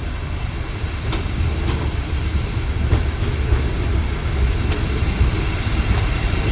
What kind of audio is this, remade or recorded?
recorded